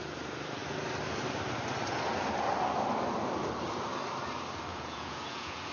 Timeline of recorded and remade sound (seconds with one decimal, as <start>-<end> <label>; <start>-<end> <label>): 0.0-4.7 recorded; 4.7-5.7 remade